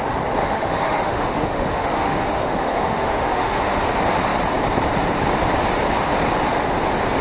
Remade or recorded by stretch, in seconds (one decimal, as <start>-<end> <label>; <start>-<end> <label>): 0.0-0.4 recorded; 0.4-3.8 remade; 3.8-7.2 recorded